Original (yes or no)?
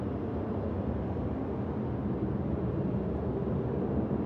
yes